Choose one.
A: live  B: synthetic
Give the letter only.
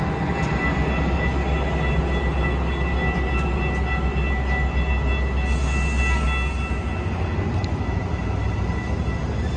A